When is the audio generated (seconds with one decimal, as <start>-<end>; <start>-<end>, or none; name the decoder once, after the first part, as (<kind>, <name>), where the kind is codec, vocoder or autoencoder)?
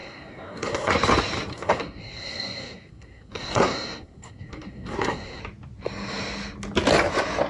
0.0-0.9 (codec, SNAC); 1.5-5.4